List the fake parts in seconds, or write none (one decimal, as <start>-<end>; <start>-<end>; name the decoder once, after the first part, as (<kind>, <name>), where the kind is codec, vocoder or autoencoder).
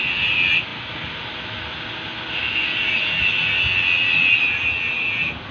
none